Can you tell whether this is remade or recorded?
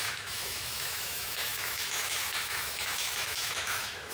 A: remade